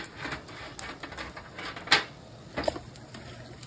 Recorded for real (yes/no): yes